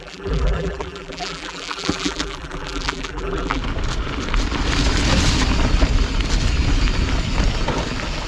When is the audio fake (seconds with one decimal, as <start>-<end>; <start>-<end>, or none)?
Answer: 0.0-3.6